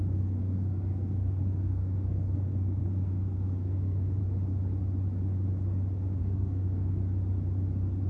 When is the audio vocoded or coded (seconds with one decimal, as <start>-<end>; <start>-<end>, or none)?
0.0-4.2; 6.2-7.0